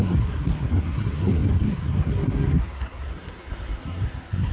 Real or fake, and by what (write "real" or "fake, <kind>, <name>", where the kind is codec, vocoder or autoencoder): fake, codec, SNAC